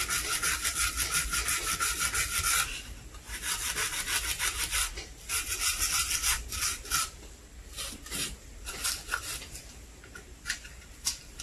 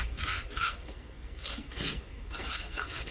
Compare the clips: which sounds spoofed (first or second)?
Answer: second